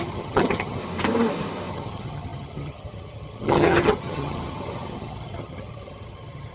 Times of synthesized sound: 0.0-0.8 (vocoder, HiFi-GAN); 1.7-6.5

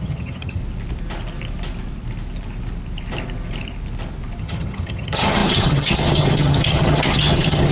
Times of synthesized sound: 0.0-0.6 (vocoder, HiFi-GAN); 4.4-7.7

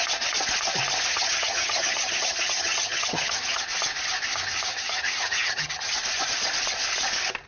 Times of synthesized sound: 1.1-3.6 (vocoder, HiFi-GAN); 4.7-5.9

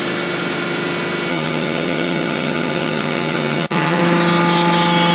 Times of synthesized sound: 1.3-4.0 (vocoder, HiFi-GAN)